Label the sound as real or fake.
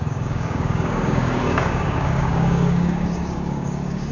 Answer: fake